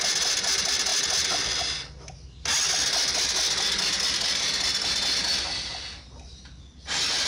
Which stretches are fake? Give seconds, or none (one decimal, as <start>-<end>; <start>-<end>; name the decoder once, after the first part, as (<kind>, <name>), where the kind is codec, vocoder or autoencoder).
5.2-5.7 (vocoder, BigVGAN v2)